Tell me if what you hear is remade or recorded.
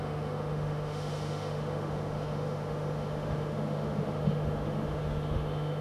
remade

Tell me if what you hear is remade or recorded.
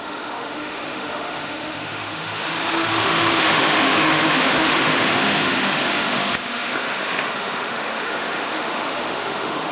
remade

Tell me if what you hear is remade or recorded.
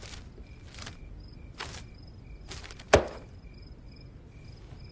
recorded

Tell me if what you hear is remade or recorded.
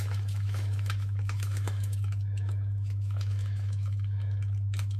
remade